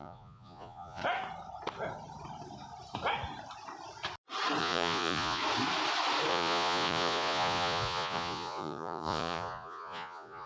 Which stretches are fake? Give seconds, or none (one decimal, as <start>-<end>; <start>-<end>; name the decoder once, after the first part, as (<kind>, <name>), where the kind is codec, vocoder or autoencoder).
0.0-1.0 (vocoder, Vocos); 4.6-5.4; 6.3-10.5